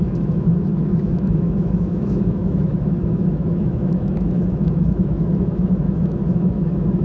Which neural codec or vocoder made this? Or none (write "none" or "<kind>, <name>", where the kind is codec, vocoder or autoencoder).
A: autoencoder, DAC-VAE